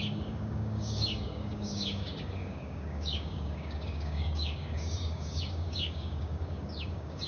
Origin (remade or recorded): remade